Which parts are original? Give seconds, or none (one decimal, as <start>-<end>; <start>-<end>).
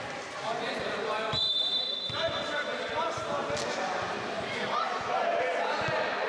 0.0-6.3